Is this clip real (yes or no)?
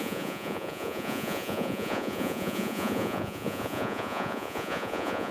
no